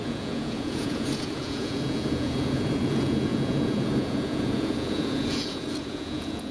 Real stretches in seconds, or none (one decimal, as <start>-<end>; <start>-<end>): none